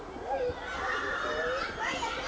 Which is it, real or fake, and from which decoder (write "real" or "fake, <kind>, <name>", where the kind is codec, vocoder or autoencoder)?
real